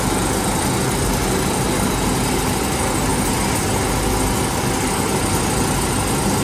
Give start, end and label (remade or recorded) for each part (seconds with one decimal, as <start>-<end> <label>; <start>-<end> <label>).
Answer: 0.0-6.4 recorded